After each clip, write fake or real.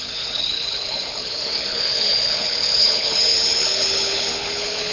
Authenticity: fake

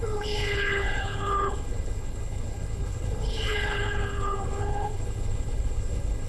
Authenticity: fake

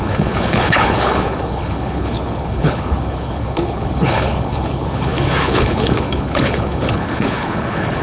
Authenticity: fake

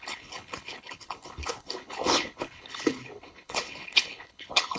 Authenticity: fake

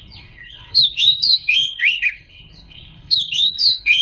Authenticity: fake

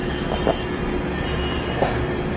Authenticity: real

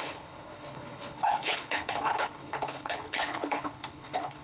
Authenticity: fake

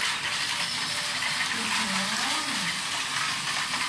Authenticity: real